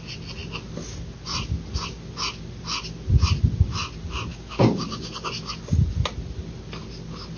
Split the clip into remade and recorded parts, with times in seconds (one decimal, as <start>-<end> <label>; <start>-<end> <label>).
0.0-4.3 recorded; 4.3-5.3 remade; 5.3-7.4 recorded